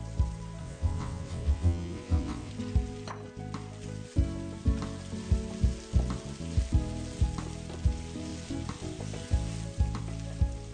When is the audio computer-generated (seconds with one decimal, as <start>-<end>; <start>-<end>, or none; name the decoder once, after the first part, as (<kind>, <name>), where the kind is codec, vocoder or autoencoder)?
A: 0.6-2.5 (vocoder, WaveNeXt)